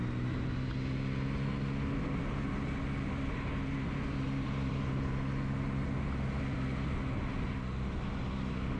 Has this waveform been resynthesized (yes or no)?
no